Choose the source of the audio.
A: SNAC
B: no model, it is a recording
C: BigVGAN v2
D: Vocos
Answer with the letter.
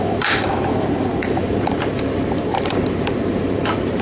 C